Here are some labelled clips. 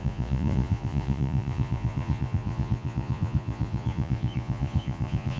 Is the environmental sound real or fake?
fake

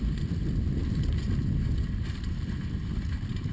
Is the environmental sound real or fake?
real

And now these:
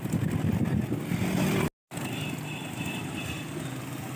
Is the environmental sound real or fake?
real